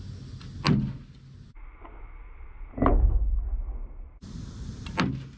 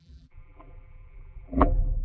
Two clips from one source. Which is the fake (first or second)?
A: second